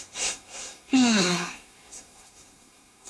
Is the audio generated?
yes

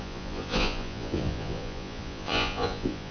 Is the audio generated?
yes